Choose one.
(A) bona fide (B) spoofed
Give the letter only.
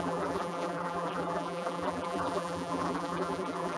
B